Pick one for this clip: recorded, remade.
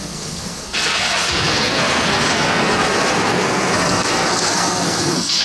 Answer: remade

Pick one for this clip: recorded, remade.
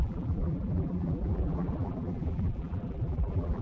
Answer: remade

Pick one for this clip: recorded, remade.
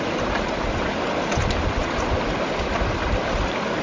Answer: recorded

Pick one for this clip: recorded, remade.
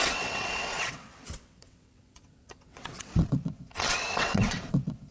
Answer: remade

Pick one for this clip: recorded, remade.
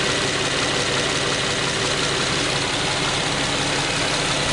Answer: recorded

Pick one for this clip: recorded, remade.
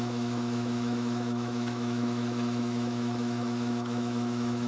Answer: remade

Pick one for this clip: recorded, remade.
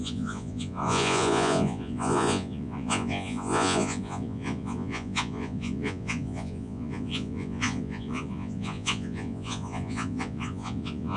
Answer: remade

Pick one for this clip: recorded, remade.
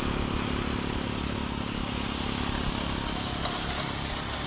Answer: recorded